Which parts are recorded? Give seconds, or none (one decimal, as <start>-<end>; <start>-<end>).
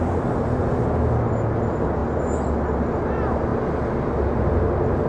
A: 0.0-5.1